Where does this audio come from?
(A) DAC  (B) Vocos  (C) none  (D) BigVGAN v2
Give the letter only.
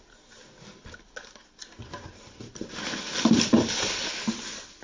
C